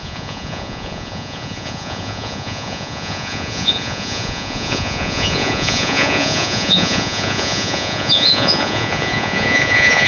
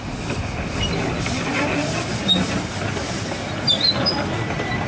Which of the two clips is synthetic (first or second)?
first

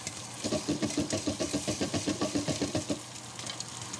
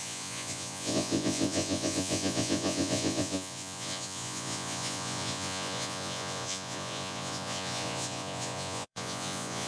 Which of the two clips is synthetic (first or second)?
second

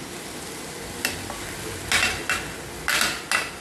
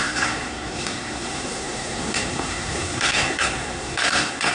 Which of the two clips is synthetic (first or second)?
second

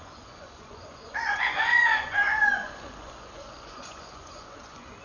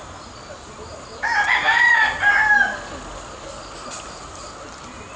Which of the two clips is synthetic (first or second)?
first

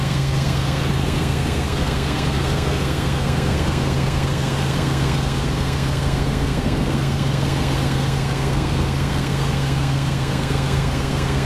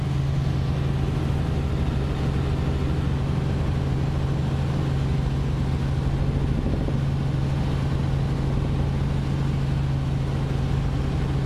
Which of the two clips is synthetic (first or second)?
first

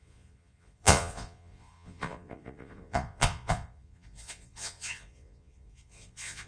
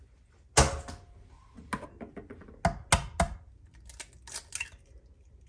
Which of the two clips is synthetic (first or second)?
first